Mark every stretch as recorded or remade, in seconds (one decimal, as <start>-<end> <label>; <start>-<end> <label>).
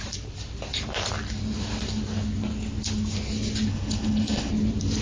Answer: 0.0-3.7 recorded; 3.7-4.5 remade; 4.5-5.0 recorded